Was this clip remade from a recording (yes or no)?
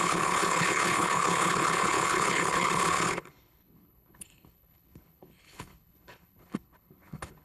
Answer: yes